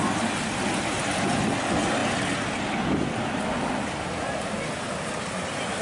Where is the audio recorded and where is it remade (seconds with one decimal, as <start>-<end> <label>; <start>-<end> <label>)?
0.0-5.8 recorded